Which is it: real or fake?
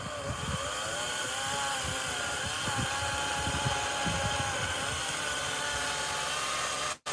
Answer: fake